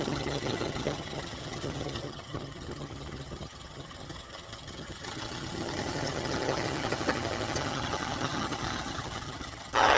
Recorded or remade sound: remade